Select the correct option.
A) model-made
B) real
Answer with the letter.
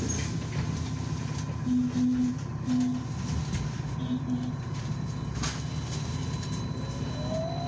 B